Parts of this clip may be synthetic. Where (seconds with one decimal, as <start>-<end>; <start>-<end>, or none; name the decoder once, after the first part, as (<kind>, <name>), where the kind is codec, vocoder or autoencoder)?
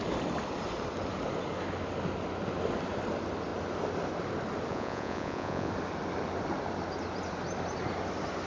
4.7-5.7 (vocoder, Vocos)